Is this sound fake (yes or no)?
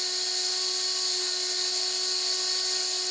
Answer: no